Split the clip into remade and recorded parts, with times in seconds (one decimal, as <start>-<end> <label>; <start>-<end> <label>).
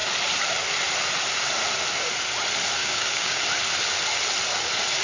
0.0-2.8 recorded; 2.8-3.4 remade; 3.4-5.0 recorded